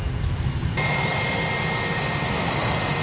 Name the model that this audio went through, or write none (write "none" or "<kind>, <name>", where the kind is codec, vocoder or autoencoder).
none